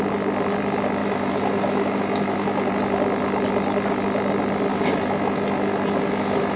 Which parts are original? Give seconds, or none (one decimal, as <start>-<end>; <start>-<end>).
0.0-1.0; 2.7-4.7